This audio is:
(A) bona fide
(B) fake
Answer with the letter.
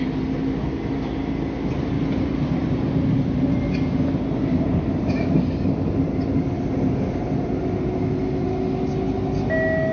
A